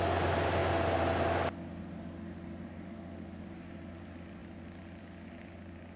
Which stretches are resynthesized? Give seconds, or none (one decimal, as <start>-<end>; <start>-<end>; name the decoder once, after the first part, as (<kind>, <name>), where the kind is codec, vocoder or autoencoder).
none